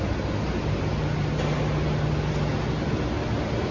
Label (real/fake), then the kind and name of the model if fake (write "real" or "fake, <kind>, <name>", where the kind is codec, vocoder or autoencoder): real